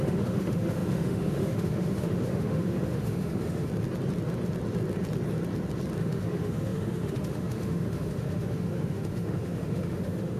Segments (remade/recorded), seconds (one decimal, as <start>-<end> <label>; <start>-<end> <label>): 0.0-3.7 remade; 3.7-6.0 recorded; 6.0-10.4 remade